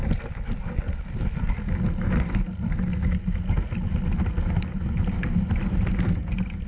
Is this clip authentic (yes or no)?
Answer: yes